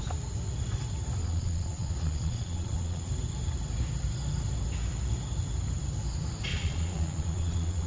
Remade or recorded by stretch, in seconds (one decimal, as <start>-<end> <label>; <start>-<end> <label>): 0.0-1.2 recorded; 1.2-3.1 remade; 3.1-6.5 recorded; 6.5-7.9 remade